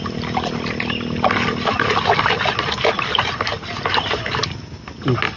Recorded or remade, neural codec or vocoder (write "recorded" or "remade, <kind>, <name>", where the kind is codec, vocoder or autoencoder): recorded